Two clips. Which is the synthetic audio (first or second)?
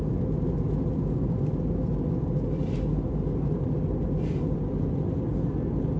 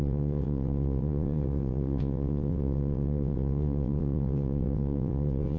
second